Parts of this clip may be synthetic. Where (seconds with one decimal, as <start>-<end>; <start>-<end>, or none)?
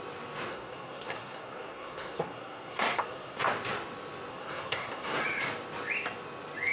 0.5-3.4; 4.3-5.2